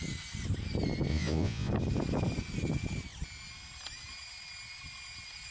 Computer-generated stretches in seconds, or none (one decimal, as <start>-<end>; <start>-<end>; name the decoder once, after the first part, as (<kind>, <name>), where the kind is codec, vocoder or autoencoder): 1.1-1.7 (vocoder, Vocos)